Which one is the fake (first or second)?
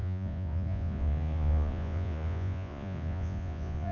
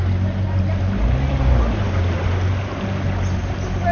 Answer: first